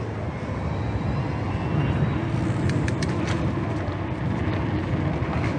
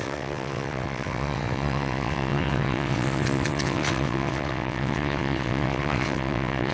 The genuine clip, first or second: first